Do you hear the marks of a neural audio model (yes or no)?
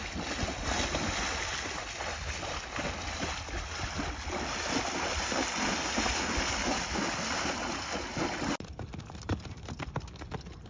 no